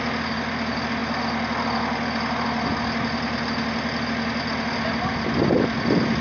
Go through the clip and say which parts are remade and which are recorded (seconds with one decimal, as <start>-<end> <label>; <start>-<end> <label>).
0.0-6.2 recorded